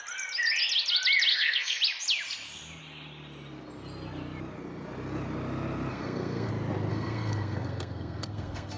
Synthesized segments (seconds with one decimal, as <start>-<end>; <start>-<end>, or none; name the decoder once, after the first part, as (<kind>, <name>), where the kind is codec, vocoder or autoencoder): 1.3-1.8 (codec, SNAC); 5.9-6.5; 6.9-8.8